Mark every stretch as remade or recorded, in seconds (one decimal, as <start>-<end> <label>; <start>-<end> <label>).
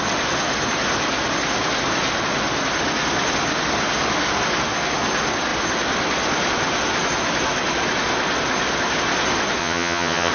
0.0-9.6 recorded; 9.6-10.3 remade